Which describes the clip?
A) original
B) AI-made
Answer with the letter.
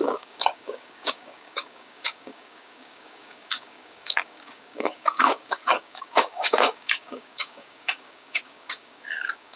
B